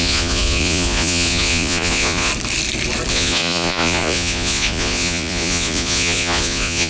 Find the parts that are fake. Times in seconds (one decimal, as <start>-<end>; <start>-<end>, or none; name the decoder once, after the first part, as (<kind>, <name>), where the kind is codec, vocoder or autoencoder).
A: 0.0-2.3 (vocoder, Vocos); 3.1-6.9